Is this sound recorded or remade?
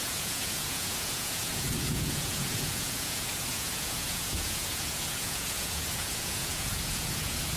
remade